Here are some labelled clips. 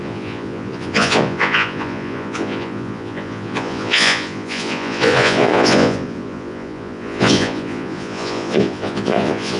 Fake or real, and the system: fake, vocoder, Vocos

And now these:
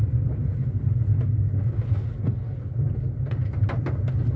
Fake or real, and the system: real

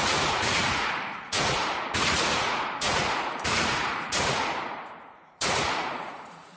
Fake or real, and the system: fake, vocoder, Vocos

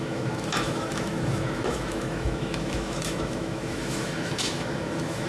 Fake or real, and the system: fake, autoencoder, DAC-VAE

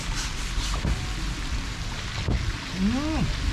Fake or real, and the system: real